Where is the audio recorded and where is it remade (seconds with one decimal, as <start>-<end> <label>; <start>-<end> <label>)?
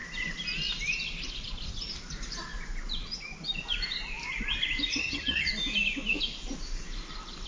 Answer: 0.0-4.9 recorded; 4.9-5.5 remade; 5.5-7.5 recorded